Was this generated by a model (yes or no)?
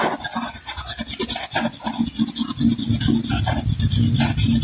no